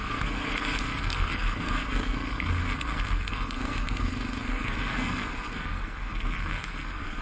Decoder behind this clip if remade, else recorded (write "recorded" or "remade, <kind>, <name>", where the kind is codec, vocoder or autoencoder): remade, codec, SNAC